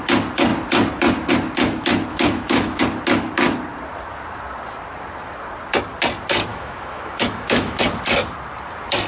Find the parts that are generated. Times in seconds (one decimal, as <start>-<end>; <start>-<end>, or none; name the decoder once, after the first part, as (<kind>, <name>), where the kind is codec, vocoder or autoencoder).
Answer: 2.1-2.8 (autoencoder, DAC-VAE); 6.5-7.8